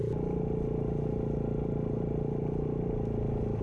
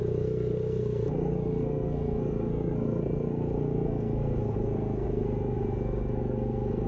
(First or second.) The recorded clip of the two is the first